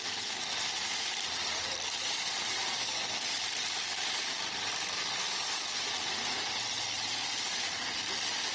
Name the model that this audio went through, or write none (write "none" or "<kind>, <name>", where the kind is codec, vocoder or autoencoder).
vocoder, BigVGAN v2